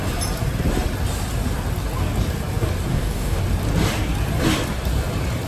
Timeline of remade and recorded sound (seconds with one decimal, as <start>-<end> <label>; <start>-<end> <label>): 0.0-2.9 recorded; 2.9-3.4 remade; 3.4-5.5 recorded